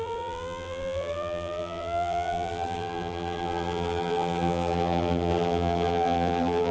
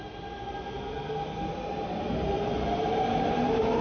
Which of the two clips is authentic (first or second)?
second